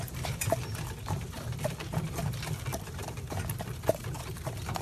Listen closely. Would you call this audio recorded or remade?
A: recorded